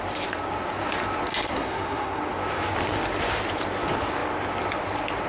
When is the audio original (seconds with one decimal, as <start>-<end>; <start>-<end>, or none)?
0.0-1.5; 2.2-5.3